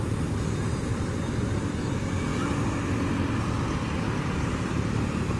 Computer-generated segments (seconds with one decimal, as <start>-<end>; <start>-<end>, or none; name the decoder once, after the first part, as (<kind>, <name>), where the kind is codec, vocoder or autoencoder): none